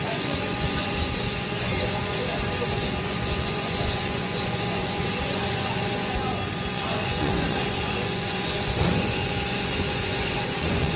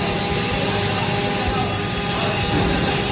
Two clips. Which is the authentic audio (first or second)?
second